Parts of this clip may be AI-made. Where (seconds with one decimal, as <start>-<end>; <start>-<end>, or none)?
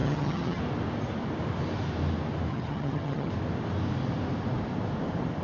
0.0-0.6; 2.5-3.3